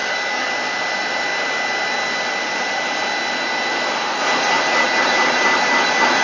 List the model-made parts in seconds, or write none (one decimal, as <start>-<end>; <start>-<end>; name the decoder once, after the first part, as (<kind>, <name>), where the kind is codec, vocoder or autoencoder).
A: 0.0-0.5 (codec, DAC)